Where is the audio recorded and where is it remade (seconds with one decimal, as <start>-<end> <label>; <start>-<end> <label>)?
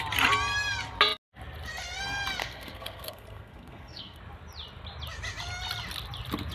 0.0-2.4 recorded; 2.4-4.2 remade; 4.2-6.5 recorded